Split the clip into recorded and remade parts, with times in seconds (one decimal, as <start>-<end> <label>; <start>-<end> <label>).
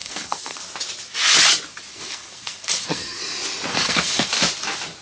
0.0-0.6 remade; 0.6-1.9 recorded; 1.9-3.2 remade; 3.2-3.7 recorded; 3.7-4.3 remade; 4.3-5.0 recorded